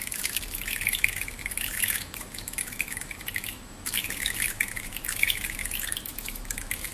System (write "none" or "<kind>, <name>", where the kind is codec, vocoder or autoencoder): autoencoder, DAC-VAE